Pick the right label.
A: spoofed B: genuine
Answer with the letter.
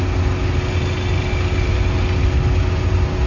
B